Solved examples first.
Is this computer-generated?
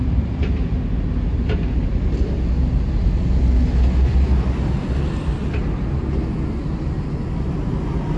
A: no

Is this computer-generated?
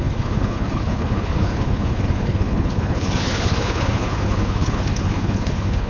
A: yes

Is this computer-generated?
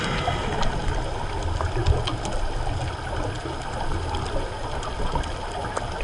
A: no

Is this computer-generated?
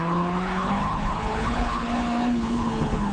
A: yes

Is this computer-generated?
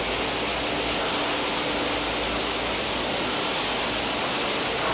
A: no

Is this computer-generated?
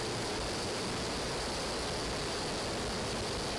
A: no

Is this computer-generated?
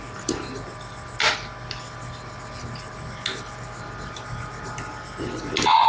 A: no